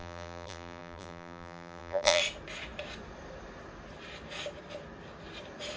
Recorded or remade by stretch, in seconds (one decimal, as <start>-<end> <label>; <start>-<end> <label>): 0.0-2.2 remade; 2.2-5.8 recorded